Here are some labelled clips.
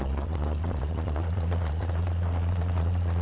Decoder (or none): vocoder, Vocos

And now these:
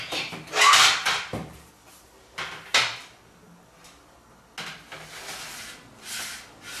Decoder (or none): none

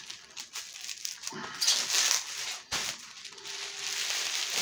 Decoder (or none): none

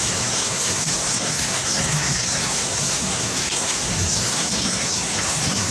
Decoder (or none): codec, SNAC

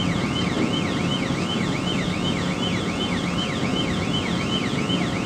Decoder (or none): none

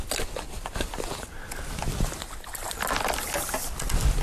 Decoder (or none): none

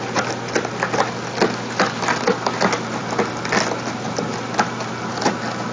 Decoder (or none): none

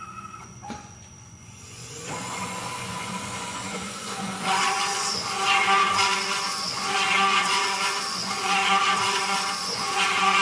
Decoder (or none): vocoder, Vocos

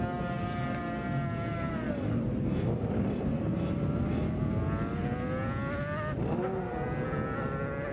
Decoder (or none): none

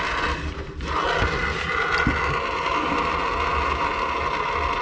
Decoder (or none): none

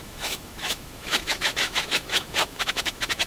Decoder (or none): autoencoder, DAC-VAE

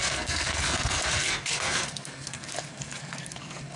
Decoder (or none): codec, SNAC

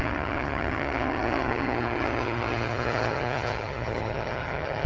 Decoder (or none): vocoder, HiFi-GAN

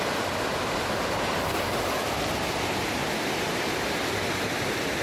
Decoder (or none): vocoder, BigVGAN v2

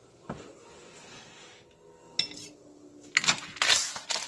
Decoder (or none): none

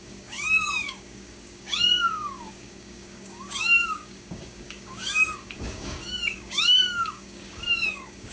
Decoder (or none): codec, DAC